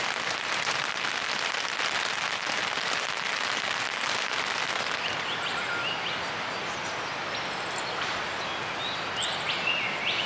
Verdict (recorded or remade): recorded